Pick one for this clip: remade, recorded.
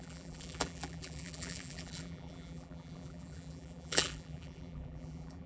remade